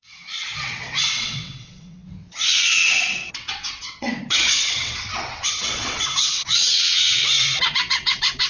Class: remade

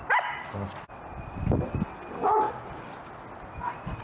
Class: recorded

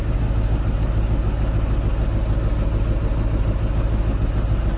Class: recorded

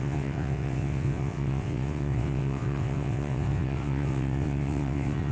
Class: remade